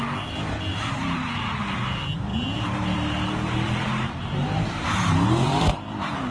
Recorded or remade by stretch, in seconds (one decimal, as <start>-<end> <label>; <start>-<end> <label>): 0.0-0.7 recorded; 0.7-1.5 remade; 1.5-2.3 recorded; 2.3-6.3 remade